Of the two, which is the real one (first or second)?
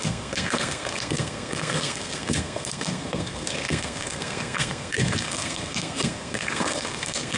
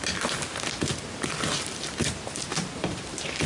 second